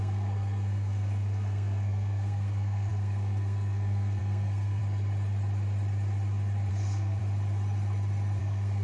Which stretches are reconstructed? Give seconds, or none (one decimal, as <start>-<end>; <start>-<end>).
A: 0.0-4.8; 6.7-7.2; 8.4-8.8